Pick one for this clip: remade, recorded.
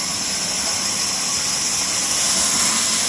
recorded